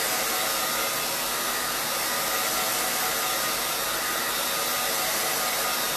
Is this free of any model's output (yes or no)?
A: yes